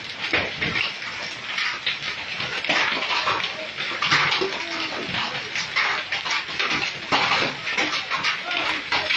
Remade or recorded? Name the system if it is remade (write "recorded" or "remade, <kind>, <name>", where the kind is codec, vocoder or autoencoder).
recorded